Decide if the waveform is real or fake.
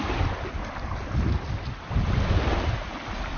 real